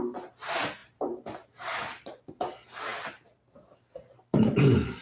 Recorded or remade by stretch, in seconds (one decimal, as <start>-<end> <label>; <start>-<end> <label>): 0.0-0.8 recorded; 0.8-2.3 remade; 2.3-5.0 recorded